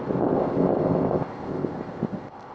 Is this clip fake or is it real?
fake